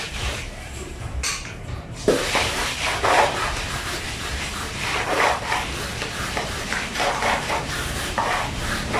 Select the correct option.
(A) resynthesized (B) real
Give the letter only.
A